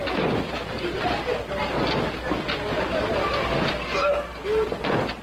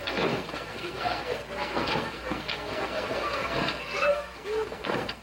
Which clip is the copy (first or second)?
second